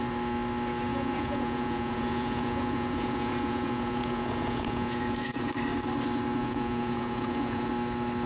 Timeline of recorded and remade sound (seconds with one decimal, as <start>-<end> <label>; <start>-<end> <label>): 0.0-0.9 recorded; 0.9-5.5 remade; 5.5-6.4 recorded; 6.4-7.7 remade; 7.7-8.3 recorded